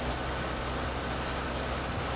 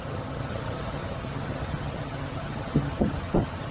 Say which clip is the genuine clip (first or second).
first